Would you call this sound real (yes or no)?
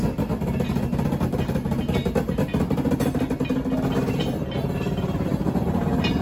yes